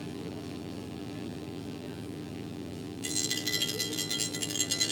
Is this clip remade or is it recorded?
remade